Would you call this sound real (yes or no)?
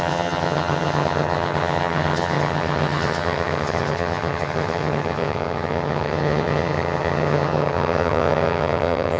no